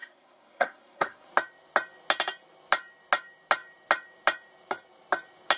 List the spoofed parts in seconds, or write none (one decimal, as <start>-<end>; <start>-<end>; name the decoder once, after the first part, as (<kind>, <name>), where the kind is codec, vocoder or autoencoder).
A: 0.0-1.3 (codec, SNAC)